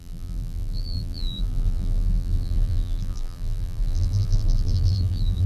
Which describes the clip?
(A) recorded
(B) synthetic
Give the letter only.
B